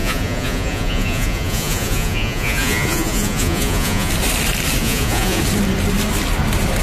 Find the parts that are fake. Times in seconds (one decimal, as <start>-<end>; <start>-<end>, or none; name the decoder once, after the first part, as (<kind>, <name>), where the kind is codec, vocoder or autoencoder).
0.0-4.1 (vocoder, Vocos); 4.8-5.4